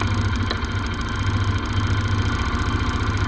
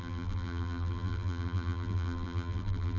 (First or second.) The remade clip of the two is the second